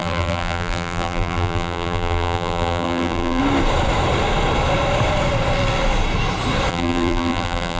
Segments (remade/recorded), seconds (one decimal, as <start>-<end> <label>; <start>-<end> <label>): 0.0-3.4 remade; 3.4-6.7 recorded; 6.7-7.8 remade